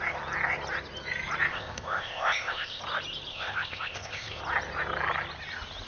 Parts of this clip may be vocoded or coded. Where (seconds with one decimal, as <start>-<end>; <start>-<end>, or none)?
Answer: 1.5-2.8; 3.3-4.4